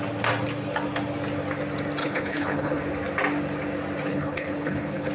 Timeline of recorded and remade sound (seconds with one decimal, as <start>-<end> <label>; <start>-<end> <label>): 0.0-2.0 recorded; 2.0-2.8 remade; 2.8-4.1 recorded; 4.1-5.1 remade